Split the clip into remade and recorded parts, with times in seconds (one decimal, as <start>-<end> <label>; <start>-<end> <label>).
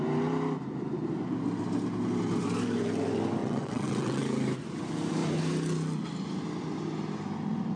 0.0-3.4 recorded; 3.4-4.2 remade; 4.2-7.8 recorded